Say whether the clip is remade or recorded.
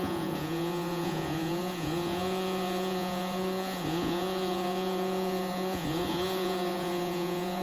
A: remade